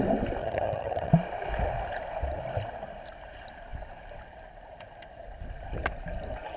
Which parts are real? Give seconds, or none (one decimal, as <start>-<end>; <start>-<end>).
0.0-0.4; 1.1-6.6